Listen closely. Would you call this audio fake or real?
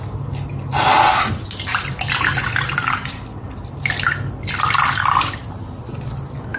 real